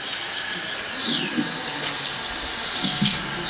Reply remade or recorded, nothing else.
recorded